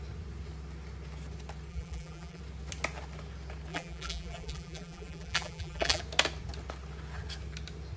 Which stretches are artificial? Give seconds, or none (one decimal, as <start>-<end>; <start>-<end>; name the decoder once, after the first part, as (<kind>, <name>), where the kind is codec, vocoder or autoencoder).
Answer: 1.7-2.4 (vocoder, BigVGAN v2); 3.7-6.0